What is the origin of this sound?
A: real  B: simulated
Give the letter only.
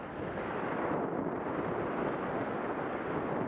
A